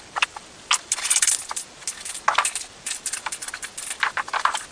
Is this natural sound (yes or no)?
yes